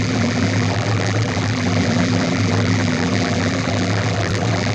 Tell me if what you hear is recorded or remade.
remade